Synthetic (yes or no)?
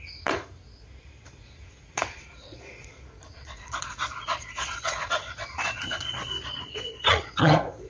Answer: yes